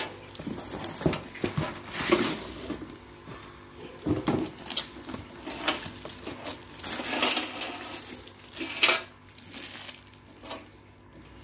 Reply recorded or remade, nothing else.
recorded